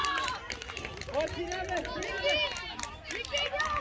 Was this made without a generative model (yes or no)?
yes